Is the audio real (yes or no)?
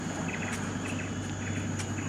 yes